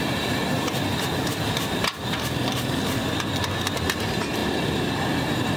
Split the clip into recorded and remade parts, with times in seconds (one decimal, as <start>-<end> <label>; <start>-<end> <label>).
0.0-5.6 recorded

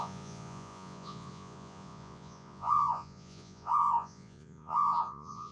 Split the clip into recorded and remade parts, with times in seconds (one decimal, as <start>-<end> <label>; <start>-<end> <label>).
0.0-5.5 remade